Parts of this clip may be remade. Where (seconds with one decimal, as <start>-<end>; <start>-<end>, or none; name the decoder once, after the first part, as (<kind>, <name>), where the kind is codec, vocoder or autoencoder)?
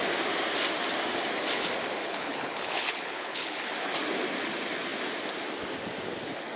2.0-3.7 (codec, HILCodec)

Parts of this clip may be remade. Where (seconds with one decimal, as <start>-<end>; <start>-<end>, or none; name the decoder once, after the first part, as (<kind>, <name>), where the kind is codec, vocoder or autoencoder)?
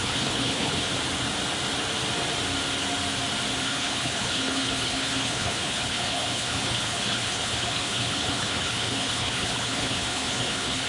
0.0-0.9 (codec, HILCodec); 3.6-10.9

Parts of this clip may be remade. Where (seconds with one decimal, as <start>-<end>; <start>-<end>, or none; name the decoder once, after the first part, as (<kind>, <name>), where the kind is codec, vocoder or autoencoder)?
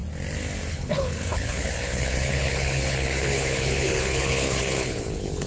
0.7-5.5 (codec, HILCodec)